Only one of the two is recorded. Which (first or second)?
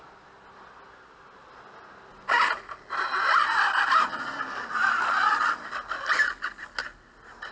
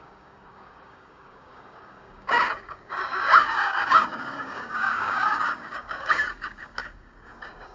first